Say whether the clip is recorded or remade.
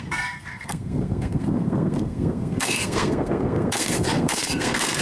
remade